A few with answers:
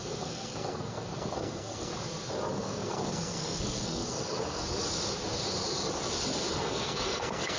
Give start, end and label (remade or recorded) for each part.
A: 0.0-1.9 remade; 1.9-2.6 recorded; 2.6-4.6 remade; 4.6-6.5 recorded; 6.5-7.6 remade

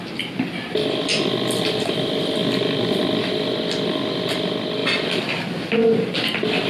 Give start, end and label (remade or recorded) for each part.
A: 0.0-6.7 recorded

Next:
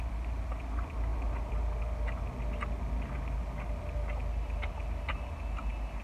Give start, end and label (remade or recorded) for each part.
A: 0.0-6.0 recorded